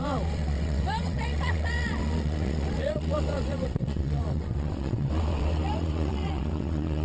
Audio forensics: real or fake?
fake